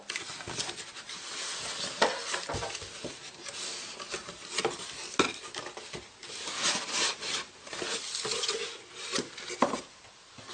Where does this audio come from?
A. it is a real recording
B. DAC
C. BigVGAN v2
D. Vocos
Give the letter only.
A